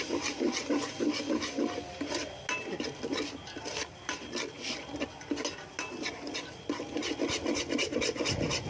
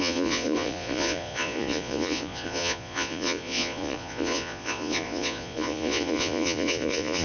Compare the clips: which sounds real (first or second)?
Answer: first